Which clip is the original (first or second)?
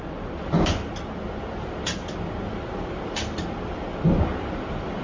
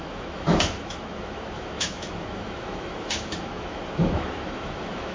first